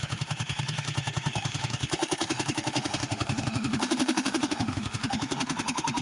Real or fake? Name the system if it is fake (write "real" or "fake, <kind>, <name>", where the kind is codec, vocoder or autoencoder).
fake, autoencoder, DAC-VAE